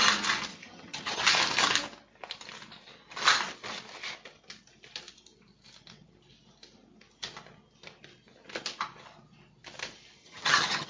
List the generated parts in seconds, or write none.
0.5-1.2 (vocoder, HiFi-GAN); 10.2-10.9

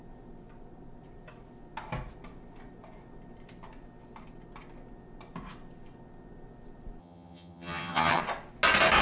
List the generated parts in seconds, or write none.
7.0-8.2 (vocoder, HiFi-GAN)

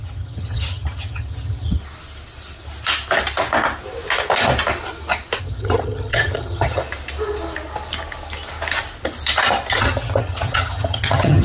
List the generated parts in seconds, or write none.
0.0-1.8 (vocoder, HiFi-GAN); 5.4-6.8; 9.7-11.4